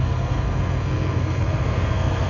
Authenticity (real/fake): fake